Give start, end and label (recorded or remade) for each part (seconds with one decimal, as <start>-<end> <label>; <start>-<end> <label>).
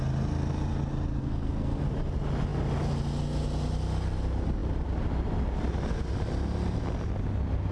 0.0-1.2 recorded; 1.2-1.8 remade; 1.8-7.7 recorded